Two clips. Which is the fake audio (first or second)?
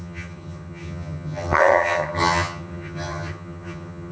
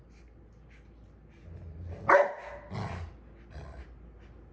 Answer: first